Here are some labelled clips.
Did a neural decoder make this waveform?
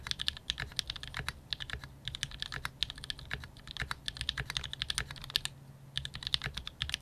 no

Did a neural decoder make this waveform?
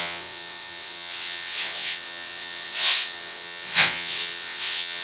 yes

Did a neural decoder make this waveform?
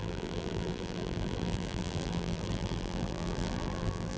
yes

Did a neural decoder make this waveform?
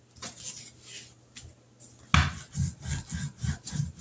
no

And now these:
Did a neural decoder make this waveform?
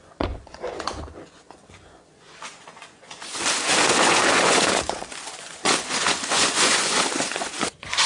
yes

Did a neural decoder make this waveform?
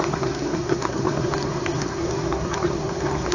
yes